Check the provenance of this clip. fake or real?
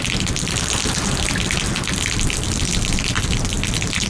real